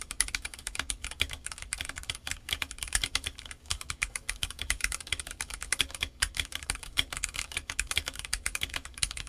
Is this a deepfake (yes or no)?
yes